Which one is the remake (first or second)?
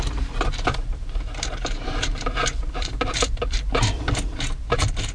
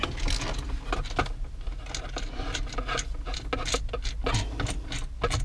first